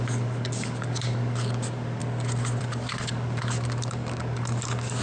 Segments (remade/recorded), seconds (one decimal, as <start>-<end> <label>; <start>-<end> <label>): 0.0-2.0 remade; 2.0-2.6 recorded; 2.6-5.0 remade